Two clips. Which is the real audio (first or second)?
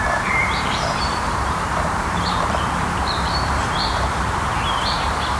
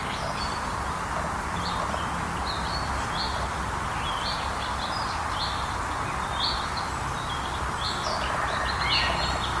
second